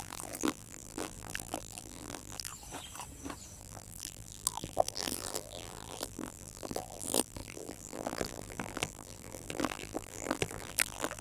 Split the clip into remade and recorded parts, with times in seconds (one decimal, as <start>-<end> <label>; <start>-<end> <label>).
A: 0.0-2.5 remade; 2.5-3.6 recorded; 3.6-11.2 remade